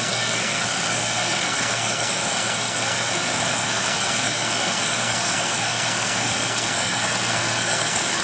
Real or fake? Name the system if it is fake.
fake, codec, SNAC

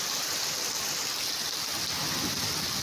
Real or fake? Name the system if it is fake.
real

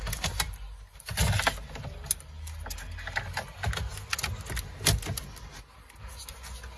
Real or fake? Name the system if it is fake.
real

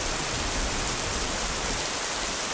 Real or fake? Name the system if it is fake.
real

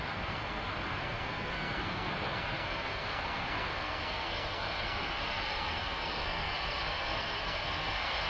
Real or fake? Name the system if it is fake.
fake, codec, SNAC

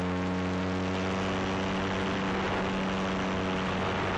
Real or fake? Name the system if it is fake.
real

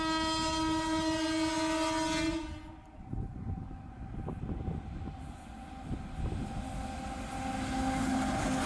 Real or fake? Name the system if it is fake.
real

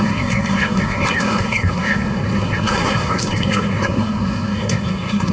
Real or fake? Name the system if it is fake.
fake, codec, SNAC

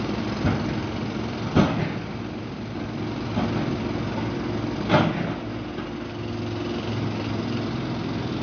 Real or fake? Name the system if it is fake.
real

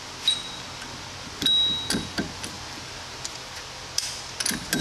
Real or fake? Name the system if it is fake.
real